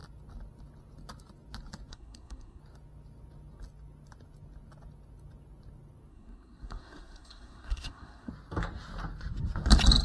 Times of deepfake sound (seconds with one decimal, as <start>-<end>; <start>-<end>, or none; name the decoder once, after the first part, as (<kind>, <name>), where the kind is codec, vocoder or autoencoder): 1.9-2.6 (codec, SNAC); 6.1-8.3